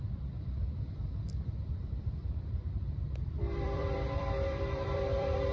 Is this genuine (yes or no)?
no